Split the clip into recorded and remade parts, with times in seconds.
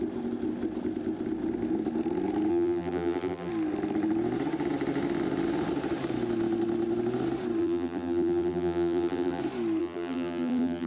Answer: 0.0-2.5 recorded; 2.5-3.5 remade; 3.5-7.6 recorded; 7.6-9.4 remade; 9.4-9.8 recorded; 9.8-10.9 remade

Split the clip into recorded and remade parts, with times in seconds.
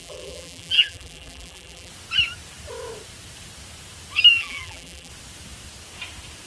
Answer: 0.0-1.9 remade; 1.9-4.3 recorded; 4.3-5.1 remade; 5.1-6.5 recorded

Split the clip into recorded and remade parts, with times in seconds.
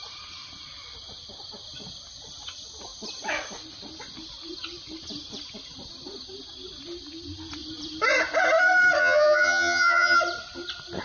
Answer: 0.0-9.0 recorded; 9.0-10.2 remade; 10.2-11.0 recorded